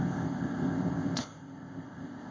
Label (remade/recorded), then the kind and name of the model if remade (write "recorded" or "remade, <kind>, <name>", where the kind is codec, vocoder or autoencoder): remade, codec, ZipCodec